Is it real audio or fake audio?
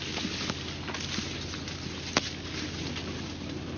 real